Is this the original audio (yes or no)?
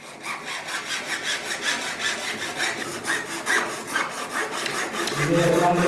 yes